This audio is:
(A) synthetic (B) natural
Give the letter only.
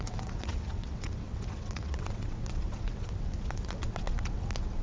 A